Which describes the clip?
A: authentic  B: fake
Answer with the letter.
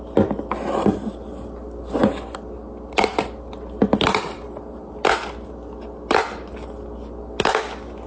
A